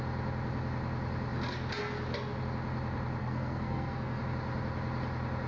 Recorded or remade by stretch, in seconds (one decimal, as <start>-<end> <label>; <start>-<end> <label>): 0.0-3.2 recorded; 3.2-4.2 remade; 4.2-5.5 recorded